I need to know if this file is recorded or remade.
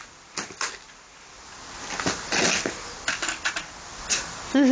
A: recorded